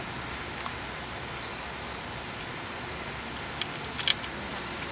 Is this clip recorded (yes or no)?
yes